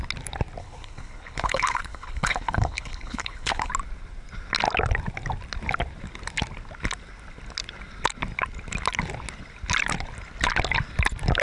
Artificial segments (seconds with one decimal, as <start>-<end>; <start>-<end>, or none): 0.6-3.7